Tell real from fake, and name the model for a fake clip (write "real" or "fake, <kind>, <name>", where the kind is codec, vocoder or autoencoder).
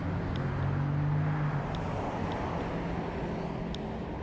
real